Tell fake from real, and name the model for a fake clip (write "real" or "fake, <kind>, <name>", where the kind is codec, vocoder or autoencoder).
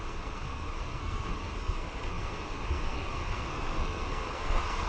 fake, codec, SNAC